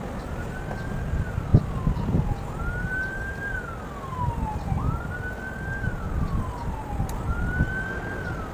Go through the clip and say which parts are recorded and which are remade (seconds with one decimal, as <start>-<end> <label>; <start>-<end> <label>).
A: 0.0-8.5 recorded